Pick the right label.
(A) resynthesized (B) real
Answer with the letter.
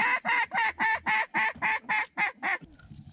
B